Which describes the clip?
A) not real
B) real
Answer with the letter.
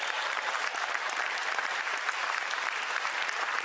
A